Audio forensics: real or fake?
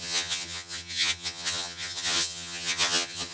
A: fake